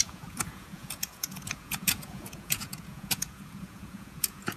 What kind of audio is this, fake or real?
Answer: fake